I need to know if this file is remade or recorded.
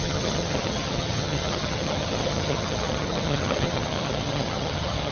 remade